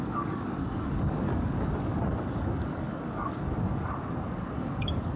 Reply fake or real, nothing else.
fake